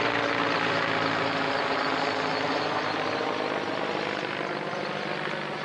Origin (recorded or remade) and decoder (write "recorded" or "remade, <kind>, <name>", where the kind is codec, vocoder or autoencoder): recorded